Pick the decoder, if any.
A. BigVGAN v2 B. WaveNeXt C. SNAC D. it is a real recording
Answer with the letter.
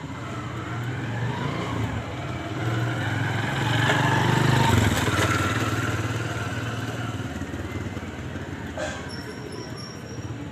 D